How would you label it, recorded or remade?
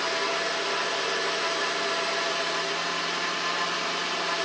recorded